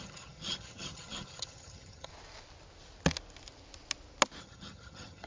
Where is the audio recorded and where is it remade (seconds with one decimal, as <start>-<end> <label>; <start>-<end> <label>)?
0.0-2.1 remade; 2.1-4.4 recorded; 4.4-5.3 remade